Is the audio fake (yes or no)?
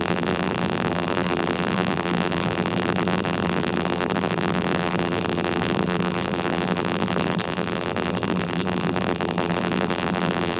yes